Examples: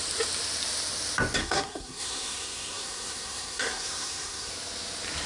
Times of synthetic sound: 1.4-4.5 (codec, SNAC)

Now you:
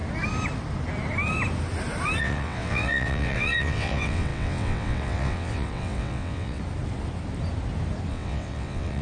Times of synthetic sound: 2.2-6.6 (vocoder, WaveNeXt); 8.1-9.0

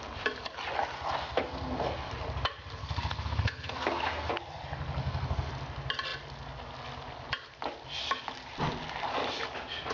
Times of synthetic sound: 1.2-2.1 (codec, SNAC); 2.8-4.3; 5.0-5.5

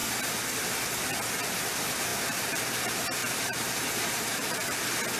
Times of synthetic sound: 2.1-2.7 (vocoder, BigVGAN v2); 3.2-4.8

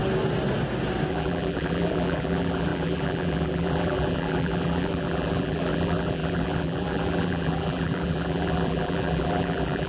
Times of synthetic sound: 1.1-9.9 (vocoder, BigVGAN v2)

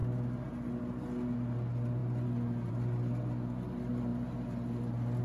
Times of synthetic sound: none